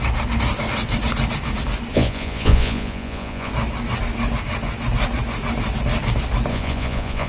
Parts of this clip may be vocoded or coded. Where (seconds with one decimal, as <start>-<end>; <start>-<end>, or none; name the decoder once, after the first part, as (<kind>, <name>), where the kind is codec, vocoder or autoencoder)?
1.9-3.5 (vocoder, Vocos); 6.5-7.3